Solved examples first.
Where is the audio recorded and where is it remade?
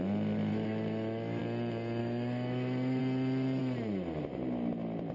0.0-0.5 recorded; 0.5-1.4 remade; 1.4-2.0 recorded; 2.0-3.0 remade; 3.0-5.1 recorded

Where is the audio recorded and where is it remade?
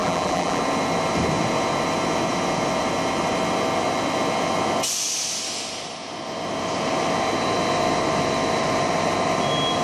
0.0-0.6 remade; 0.6-9.8 recorded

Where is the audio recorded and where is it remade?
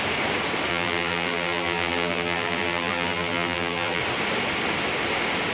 0.0-0.7 recorded; 0.7-4.0 remade; 4.0-5.5 recorded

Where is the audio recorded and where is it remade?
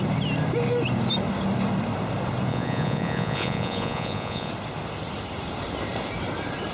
0.0-2.5 recorded; 2.5-4.5 remade; 4.5-6.7 recorded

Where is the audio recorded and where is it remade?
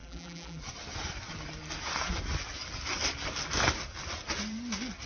0.0-0.6 remade; 0.6-5.1 recorded